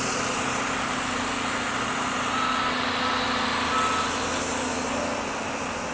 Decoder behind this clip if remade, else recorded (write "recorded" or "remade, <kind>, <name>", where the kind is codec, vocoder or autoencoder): recorded